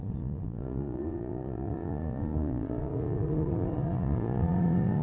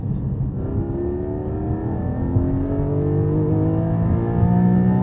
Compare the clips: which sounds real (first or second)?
second